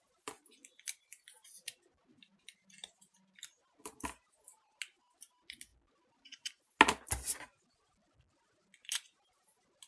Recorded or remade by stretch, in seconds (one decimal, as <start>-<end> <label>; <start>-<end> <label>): 0.0-0.6 recorded; 0.6-3.9 remade; 3.9-5.7 recorded; 5.7-6.6 remade; 6.6-9.9 recorded